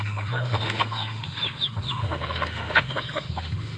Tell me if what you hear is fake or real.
fake